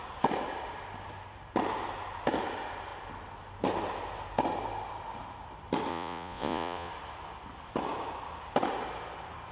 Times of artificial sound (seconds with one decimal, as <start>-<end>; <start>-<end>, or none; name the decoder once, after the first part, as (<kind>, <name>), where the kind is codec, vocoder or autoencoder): 5.9-6.9 (vocoder, Vocos)